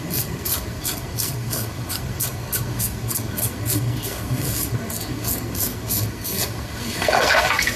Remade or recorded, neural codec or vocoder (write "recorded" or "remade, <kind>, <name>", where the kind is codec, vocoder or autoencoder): remade, codec, SNAC